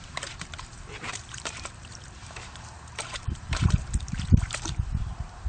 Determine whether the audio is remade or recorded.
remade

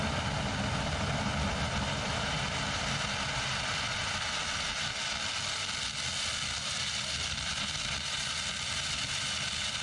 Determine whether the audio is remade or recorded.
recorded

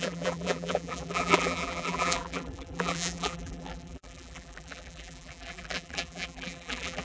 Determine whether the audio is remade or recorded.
remade